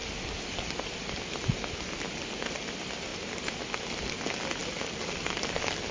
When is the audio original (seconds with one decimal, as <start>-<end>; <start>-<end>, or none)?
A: 0.0-4.6; 5.3-5.9